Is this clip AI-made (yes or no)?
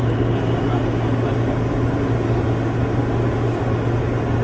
no